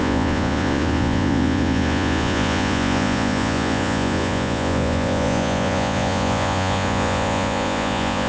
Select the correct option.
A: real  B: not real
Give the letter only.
B